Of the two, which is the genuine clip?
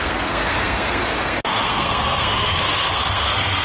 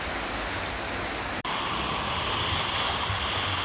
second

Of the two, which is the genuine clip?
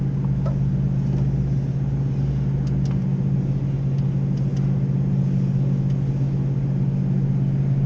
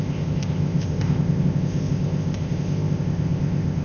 first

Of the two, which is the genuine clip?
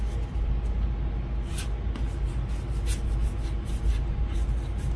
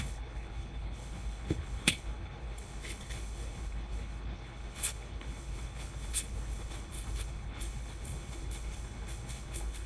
first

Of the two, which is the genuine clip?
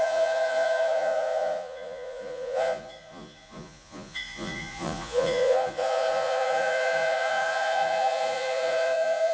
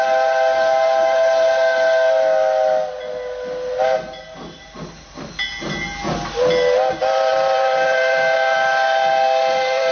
second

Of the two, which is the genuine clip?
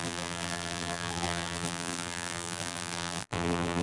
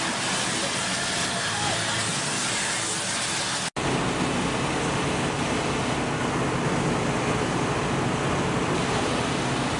second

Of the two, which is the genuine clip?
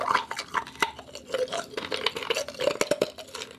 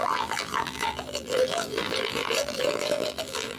first